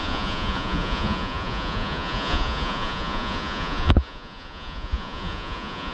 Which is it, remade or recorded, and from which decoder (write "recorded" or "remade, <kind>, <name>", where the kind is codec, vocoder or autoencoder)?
remade, vocoder, Vocos